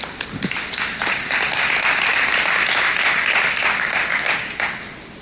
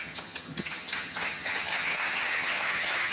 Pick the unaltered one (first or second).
first